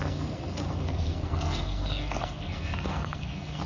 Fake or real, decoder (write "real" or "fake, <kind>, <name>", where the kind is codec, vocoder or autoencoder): fake, codec, SNAC